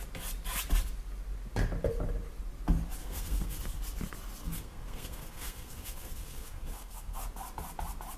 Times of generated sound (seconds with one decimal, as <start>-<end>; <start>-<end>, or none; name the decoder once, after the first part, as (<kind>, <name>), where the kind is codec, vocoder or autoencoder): 3.0-3.6 (codec, SNAC); 4.4-7.2

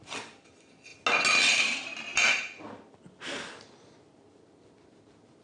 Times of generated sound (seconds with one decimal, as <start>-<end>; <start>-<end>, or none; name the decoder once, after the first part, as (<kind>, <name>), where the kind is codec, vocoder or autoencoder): none

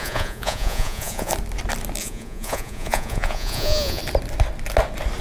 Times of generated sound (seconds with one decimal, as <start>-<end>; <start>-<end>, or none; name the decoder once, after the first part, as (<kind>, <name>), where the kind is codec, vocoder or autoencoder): 0.0-1.3 (vocoder, Vocos); 2.0-4.0